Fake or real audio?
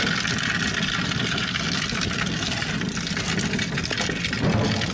real